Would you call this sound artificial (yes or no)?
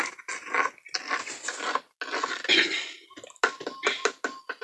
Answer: no